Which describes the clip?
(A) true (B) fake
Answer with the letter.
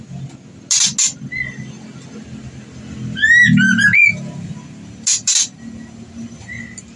A